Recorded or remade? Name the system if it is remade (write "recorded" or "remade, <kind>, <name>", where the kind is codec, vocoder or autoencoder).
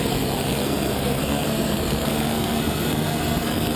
remade, codec, SNAC